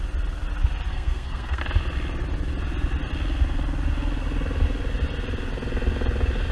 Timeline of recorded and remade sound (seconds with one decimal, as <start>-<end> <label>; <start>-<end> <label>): 0.0-0.9 recorded; 0.9-1.6 remade; 1.6-6.5 recorded